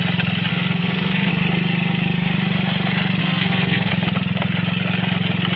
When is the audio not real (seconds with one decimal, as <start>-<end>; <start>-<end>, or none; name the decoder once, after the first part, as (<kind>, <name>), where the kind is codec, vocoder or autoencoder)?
0.5-1.3 (codec, SNAC); 3.2-3.9